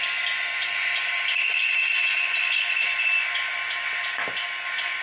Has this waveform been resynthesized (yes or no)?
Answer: no